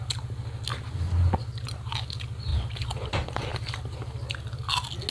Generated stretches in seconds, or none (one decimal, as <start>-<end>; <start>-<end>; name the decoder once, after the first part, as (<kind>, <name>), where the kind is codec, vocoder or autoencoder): 2.5-3.1 (vocoder, BigVGAN v2); 3.5-4.6